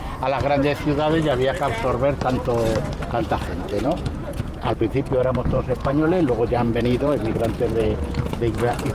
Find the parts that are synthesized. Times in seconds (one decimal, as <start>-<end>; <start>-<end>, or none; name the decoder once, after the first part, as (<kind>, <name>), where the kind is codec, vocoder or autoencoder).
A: 3.2-8.1 (vocoder, Vocos)